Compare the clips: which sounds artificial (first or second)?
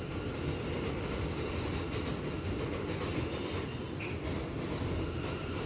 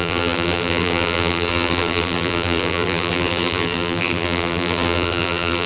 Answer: second